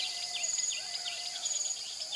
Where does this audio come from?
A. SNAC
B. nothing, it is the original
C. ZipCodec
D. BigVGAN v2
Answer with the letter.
B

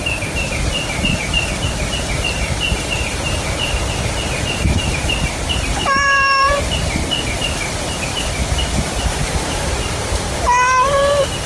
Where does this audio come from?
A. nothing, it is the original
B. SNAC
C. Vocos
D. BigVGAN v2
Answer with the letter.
D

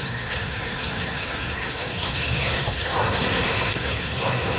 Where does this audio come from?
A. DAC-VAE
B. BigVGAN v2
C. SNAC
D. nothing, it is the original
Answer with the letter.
C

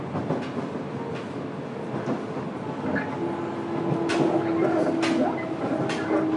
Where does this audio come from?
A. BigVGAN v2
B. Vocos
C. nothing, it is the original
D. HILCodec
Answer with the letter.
C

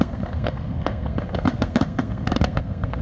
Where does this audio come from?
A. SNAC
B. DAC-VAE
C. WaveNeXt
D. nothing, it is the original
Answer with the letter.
A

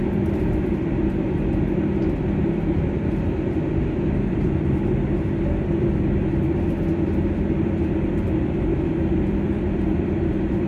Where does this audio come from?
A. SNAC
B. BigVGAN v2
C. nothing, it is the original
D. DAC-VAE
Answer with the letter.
B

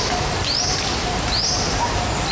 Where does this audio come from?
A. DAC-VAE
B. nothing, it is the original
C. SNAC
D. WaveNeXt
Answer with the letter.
B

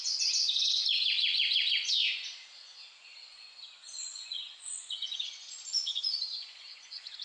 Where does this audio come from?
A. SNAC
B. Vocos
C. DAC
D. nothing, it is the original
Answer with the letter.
B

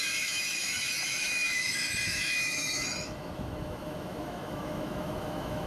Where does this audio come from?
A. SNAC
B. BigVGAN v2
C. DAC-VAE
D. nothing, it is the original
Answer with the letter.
C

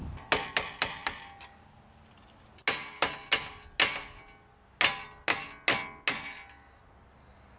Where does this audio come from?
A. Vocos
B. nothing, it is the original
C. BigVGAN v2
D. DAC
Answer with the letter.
B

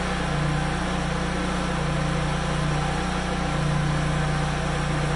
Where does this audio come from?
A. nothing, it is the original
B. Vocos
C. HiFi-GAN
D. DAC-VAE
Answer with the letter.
A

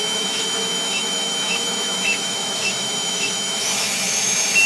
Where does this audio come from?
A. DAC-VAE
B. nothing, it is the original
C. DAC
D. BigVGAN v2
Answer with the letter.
A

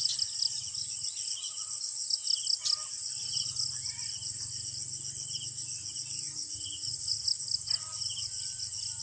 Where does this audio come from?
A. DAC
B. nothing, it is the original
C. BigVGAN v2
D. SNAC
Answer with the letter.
B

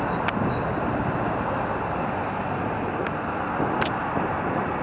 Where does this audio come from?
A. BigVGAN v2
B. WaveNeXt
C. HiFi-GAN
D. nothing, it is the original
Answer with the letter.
D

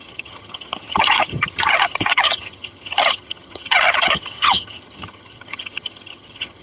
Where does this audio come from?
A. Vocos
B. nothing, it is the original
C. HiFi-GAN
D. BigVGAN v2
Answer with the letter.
C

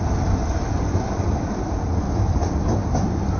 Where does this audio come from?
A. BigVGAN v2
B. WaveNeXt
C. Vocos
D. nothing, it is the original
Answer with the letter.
D